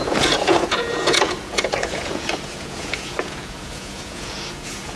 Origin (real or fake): fake